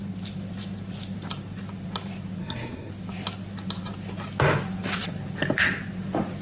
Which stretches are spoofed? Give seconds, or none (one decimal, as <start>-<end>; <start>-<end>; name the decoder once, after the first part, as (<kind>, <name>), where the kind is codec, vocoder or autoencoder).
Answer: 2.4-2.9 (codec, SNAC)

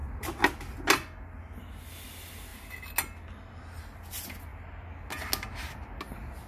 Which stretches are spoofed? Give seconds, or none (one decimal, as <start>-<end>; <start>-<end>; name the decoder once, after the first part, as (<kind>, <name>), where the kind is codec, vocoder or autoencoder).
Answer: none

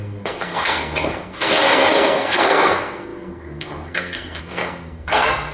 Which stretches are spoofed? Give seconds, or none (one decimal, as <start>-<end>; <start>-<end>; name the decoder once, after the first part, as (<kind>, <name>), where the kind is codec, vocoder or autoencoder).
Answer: 0.0-5.5 (codec, SNAC)

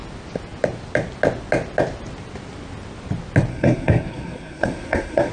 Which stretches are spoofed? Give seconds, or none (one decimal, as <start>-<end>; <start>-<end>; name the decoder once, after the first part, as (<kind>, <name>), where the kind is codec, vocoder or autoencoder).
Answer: 3.5-5.3 (codec, SNAC)

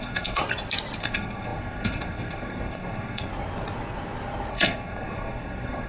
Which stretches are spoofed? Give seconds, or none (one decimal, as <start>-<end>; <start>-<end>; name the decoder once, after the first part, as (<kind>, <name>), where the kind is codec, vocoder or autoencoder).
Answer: 0.0-0.4 (codec, SNAC); 1.0-3.3; 4.5-5.9

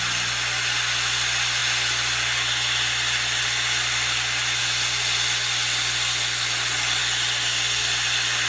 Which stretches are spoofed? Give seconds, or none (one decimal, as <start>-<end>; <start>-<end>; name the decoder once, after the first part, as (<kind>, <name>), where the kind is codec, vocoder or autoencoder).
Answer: none